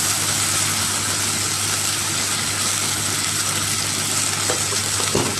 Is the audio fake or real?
real